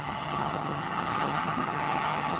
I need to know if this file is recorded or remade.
remade